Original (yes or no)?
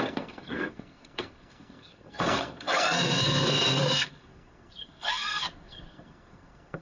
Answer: no